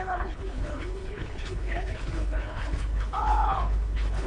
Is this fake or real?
fake